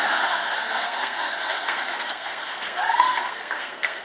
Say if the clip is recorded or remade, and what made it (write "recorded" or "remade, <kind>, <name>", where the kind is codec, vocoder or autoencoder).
remade, codec, SNAC